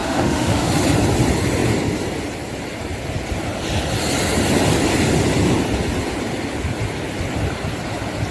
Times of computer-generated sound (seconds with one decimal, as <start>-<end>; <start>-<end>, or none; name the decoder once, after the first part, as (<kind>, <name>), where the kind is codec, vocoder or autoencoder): 0.0-0.7 (autoencoder, DAC-VAE)